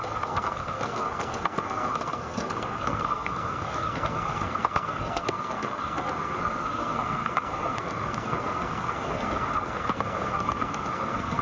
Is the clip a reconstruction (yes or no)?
yes